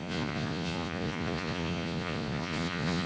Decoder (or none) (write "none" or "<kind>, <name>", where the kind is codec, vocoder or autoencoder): vocoder, Vocos